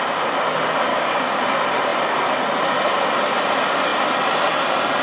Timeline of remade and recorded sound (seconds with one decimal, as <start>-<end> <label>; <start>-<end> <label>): 0.0-0.9 recorded; 0.9-1.4 remade; 1.4-5.0 recorded